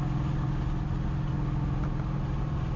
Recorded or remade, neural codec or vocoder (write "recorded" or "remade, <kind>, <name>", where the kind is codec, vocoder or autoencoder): recorded